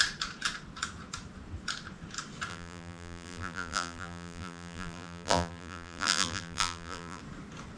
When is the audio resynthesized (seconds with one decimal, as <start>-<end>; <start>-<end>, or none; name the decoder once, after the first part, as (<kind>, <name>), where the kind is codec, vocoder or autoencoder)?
2.5-7.2 (vocoder, BigVGAN v2)